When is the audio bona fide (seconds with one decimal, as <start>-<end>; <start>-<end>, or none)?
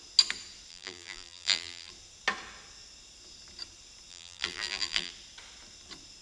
0.0-0.7; 1.9-4.1; 5.1-6.2